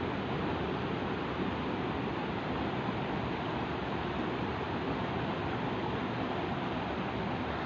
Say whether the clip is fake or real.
real